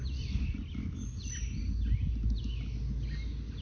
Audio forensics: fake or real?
real